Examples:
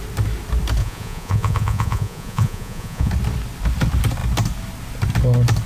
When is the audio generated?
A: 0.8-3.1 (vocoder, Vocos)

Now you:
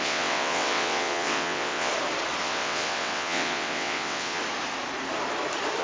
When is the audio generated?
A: 0.0-1.9 (vocoder, WaveNeXt); 2.4-4.4

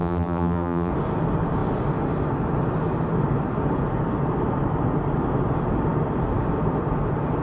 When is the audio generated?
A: 0.0-0.9 (vocoder, BigVGAN v2)

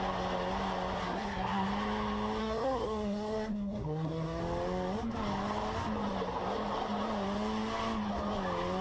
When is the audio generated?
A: 1.0-1.7 (codec, SNAC); 2.4-4.4

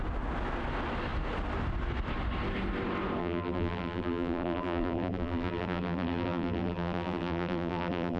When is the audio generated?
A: 3.2-8.2 (vocoder, BigVGAN v2)